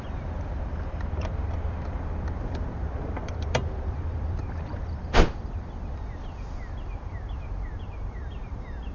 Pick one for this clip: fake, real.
fake